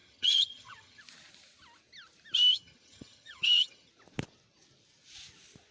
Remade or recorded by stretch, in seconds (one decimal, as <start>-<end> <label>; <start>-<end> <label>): 0.0-1.0 remade; 1.0-2.5 recorded; 2.5-3.9 remade; 3.9-5.7 recorded

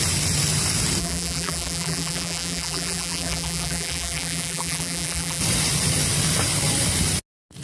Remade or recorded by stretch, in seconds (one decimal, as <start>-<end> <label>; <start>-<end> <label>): 0.0-1.0 recorded; 1.0-5.4 remade; 5.4-7.6 recorded